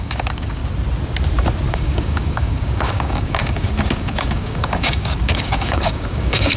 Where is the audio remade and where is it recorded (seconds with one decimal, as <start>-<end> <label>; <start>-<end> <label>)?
0.0-0.6 remade; 0.6-1.7 recorded; 1.7-6.6 remade